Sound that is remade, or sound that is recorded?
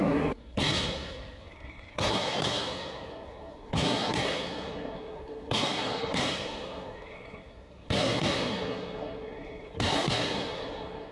remade